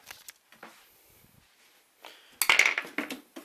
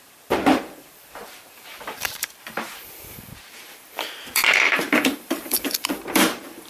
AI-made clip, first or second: second